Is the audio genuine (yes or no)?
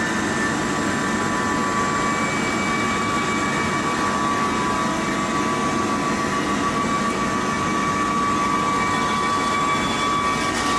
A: yes